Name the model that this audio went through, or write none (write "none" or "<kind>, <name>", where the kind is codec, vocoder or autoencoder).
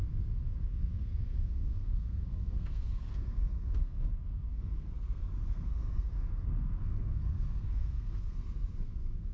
codec, SNAC